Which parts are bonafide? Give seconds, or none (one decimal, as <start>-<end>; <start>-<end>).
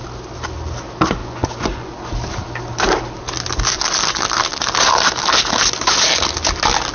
0.0-1.2; 1.9-6.9